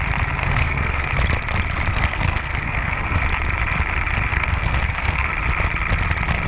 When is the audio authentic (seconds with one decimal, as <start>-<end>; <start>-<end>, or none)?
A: 0.0-0.4; 1.1-1.9; 3.2-4.3; 5.3-6.5